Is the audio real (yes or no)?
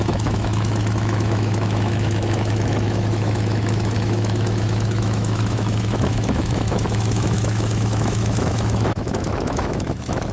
no